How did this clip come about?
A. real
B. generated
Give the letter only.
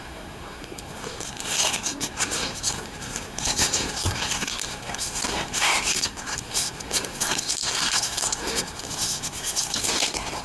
B